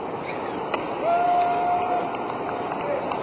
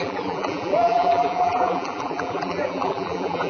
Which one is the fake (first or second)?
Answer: second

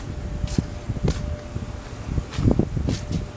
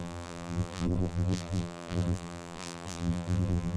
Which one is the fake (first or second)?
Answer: second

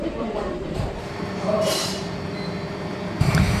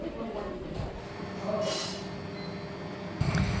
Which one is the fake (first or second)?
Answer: first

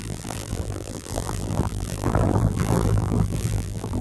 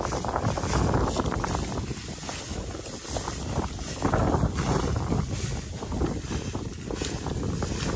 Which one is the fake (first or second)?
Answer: first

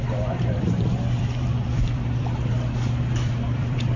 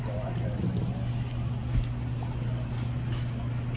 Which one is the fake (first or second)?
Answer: first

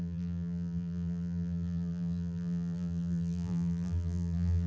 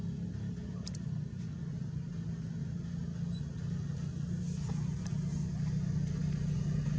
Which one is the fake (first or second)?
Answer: first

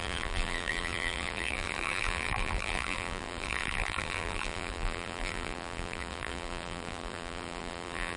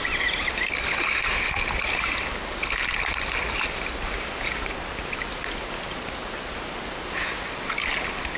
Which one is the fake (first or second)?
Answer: first